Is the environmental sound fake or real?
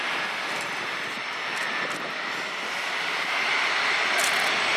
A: real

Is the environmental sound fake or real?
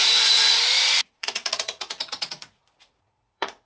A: fake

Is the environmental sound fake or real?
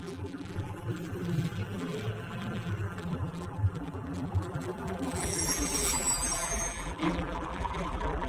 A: fake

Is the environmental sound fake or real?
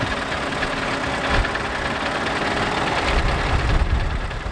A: real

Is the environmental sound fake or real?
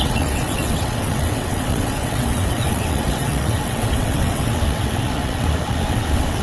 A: fake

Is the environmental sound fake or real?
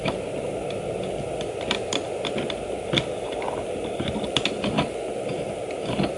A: real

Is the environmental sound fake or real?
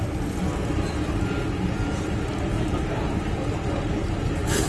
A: real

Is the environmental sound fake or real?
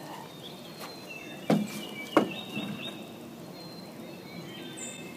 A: real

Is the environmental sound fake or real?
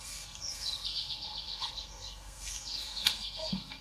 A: fake